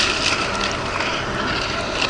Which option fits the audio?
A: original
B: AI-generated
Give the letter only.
A